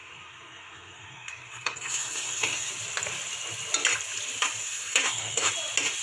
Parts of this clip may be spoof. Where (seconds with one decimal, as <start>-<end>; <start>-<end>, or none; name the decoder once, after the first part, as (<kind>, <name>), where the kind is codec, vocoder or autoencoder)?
0.0-2.7 (codec, SNAC); 4.6-5.5